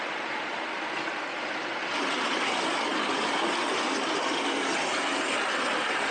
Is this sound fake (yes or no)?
no